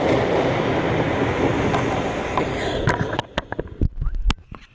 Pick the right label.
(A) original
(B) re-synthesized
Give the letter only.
A